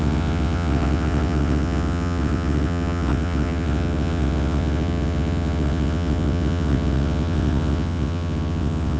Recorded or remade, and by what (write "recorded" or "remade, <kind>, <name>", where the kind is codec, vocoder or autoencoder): remade, vocoder, WaveNeXt